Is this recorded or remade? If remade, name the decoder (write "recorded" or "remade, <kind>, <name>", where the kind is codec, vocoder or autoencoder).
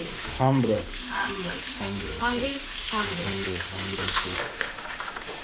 remade, autoencoder, DAC-VAE